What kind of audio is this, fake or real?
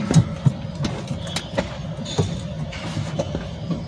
real